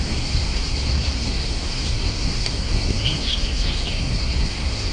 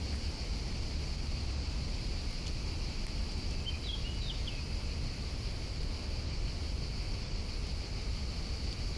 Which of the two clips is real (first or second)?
second